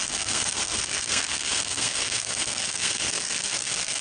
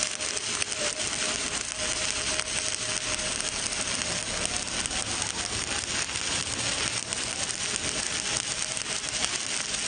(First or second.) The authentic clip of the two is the second